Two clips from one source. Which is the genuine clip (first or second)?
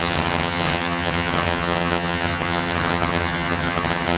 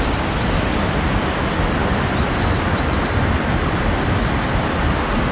second